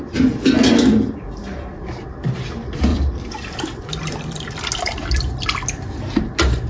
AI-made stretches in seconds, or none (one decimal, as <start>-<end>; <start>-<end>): 2.9-3.9